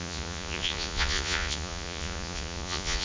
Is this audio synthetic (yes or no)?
yes